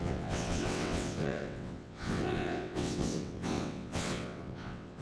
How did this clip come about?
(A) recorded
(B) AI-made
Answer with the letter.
B